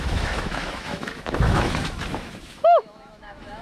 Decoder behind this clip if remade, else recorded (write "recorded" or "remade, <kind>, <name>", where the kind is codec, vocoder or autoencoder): remade, autoencoder, DAC-VAE